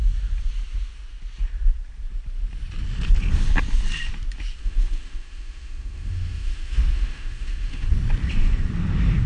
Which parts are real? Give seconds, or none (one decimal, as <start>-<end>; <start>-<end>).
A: 0.0-4.6; 7.9-9.3

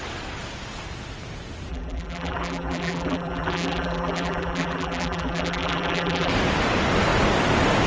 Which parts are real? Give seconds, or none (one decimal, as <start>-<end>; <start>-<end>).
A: 0.0-1.7; 6.3-7.9

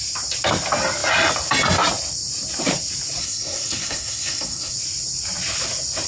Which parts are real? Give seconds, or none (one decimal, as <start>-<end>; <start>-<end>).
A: 0.0-3.2; 4.7-6.1

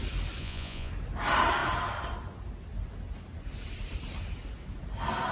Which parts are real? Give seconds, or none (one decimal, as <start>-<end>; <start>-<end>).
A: 0.0-0.4; 0.9-5.3

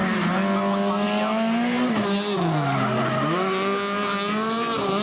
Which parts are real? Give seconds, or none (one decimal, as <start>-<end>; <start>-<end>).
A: 0.0-5.0